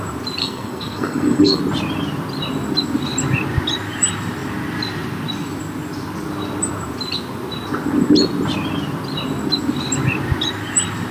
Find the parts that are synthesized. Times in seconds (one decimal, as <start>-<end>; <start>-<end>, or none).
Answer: 0.4-1.6